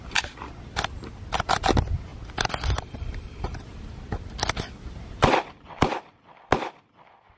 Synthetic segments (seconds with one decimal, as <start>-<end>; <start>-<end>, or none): 2.1-6.5